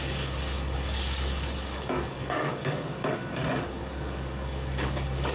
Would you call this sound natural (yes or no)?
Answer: no